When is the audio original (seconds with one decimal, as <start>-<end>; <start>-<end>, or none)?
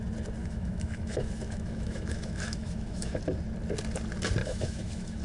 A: 0.0-0.4; 3.2-4.4